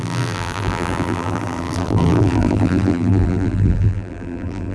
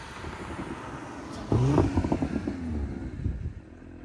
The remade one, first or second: first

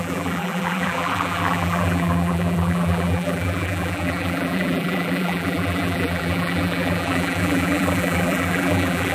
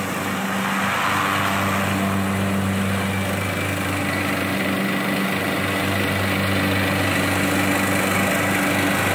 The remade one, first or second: first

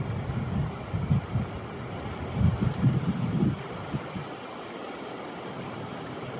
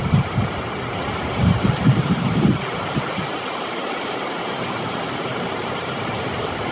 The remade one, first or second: second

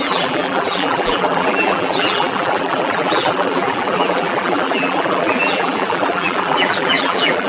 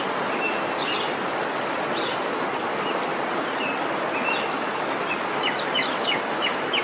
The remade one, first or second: first